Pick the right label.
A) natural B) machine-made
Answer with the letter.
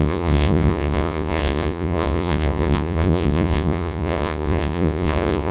B